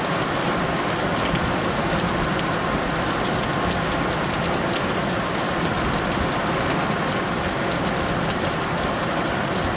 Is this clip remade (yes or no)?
no